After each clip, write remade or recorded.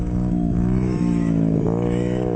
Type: remade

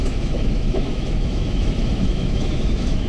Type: remade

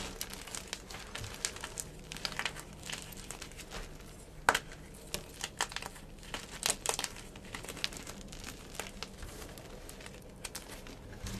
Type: recorded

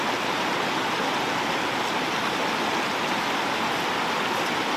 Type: recorded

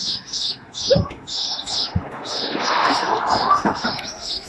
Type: remade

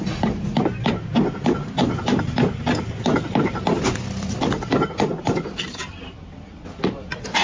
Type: recorded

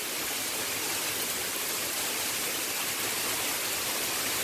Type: recorded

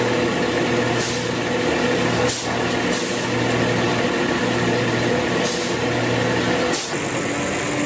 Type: recorded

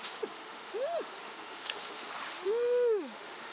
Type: remade